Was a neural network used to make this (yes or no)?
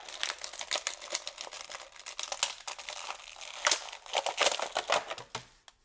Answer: no